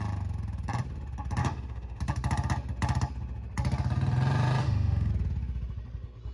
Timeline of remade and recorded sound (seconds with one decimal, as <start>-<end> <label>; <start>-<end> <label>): 0.0-1.4 recorded; 1.4-2.0 remade; 2.0-4.6 recorded; 4.6-5.1 remade; 5.1-6.3 recorded